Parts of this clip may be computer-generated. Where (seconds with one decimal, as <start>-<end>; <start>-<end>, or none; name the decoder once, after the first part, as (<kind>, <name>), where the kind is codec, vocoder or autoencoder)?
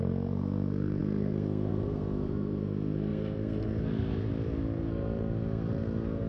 0.0-6.3 (codec, SNAC)